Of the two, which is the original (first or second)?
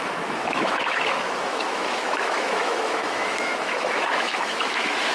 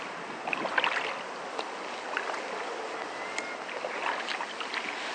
second